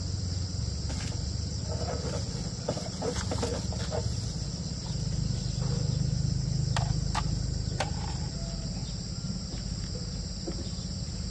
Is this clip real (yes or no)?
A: yes